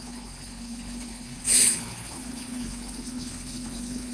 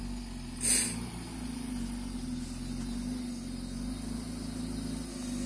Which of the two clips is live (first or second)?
second